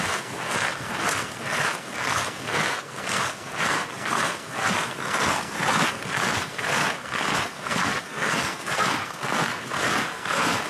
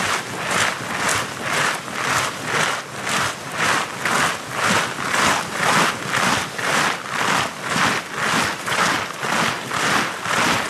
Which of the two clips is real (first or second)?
second